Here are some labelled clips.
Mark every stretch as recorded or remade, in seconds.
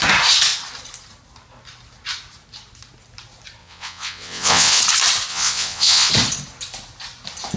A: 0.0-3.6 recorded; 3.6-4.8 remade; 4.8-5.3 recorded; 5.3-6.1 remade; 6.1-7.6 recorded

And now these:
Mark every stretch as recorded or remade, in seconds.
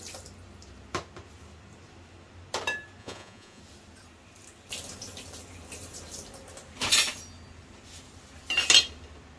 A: 0.0-3.0 recorded; 3.0-3.6 remade; 3.6-9.4 recorded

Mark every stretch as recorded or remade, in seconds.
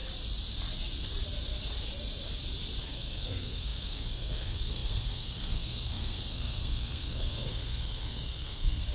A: 0.0-2.8 recorded; 2.8-8.9 remade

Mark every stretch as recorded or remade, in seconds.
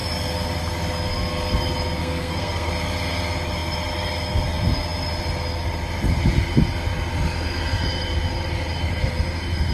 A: 0.0-2.0 recorded; 2.0-2.7 remade; 2.7-9.7 recorded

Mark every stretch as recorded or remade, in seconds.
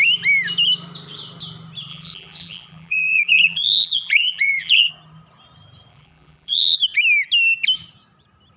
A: 0.0-1.9 recorded; 1.9-4.9 remade; 4.9-5.9 recorded; 5.9-6.8 remade; 6.8-8.6 recorded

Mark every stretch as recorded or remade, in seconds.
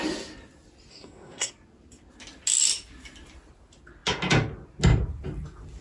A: 0.0-0.9 recorded; 0.9-1.5 remade; 1.5-5.8 recorded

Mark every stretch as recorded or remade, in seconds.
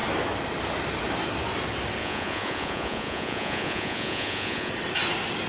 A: 0.0-2.0 recorded; 2.0-4.7 remade; 4.7-5.5 recorded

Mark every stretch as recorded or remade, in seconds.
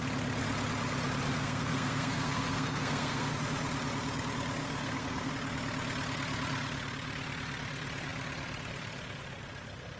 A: 0.0-1.4 recorded; 1.4-3.3 remade; 3.3-4.6 recorded; 4.6-5.3 remade; 5.3-10.0 recorded